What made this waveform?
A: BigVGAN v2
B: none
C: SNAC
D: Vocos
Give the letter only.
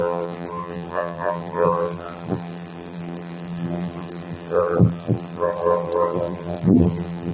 A